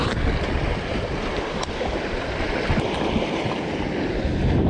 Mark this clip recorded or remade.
recorded